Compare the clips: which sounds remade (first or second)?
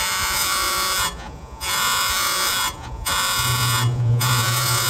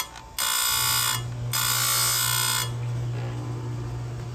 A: first